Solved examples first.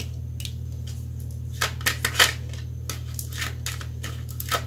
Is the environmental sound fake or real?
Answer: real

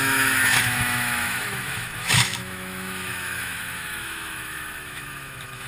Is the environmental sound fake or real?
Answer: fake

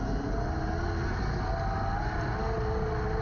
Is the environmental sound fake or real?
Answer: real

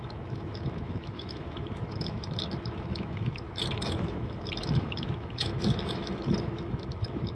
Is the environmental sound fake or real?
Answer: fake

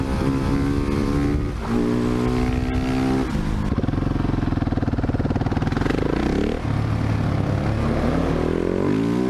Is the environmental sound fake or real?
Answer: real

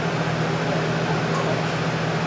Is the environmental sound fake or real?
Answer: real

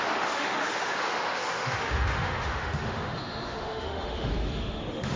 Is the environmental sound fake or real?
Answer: fake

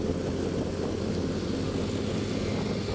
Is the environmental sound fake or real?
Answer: real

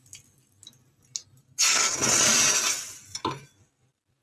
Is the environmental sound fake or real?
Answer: real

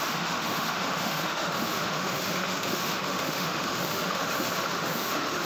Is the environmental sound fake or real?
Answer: fake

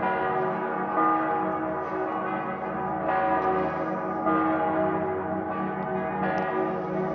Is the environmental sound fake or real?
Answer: real